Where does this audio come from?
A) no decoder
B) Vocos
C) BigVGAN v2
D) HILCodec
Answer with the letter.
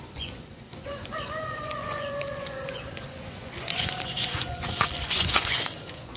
B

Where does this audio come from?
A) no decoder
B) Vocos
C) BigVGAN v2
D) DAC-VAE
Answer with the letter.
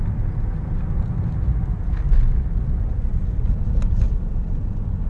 A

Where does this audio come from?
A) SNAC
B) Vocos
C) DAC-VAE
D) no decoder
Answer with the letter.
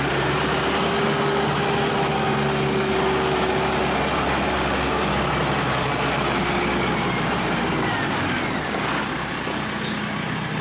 D